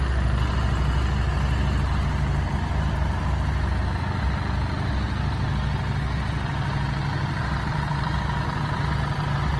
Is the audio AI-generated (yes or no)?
no